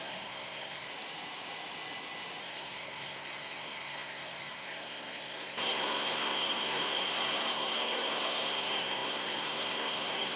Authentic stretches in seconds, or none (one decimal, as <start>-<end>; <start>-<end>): 0.9-2.4